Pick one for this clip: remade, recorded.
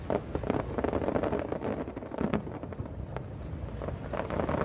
recorded